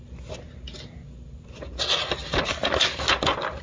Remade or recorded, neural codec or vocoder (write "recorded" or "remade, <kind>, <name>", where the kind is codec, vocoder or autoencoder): recorded